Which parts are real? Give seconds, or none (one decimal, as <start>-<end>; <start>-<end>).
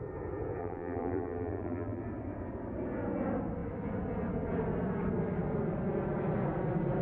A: 0.0-0.6; 2.0-7.0